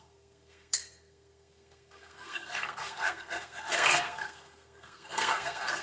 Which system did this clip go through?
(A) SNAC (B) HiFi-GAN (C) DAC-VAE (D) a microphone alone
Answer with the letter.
A